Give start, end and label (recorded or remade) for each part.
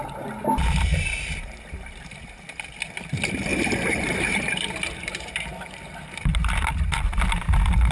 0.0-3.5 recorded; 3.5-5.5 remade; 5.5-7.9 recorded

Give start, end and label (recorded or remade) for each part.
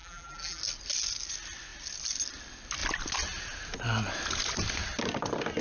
0.0-0.6 remade; 0.6-5.6 recorded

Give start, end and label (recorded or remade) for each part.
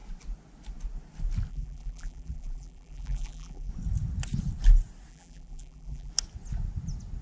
0.0-1.5 recorded; 1.5-3.7 remade; 3.7-5.1 recorded; 5.1-6.1 remade; 6.1-7.2 recorded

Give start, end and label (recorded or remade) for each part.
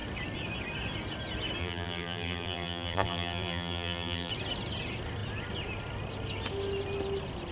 0.0-1.6 recorded; 1.6-4.3 remade; 4.3-7.5 recorded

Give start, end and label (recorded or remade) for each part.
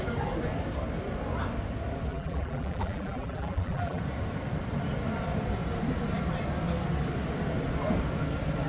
0.0-2.1 recorded; 2.1-4.0 remade; 4.0-8.7 recorded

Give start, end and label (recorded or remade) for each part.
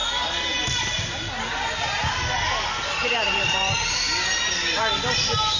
0.0-3.0 recorded; 3.0-4.9 remade; 4.9-5.6 recorded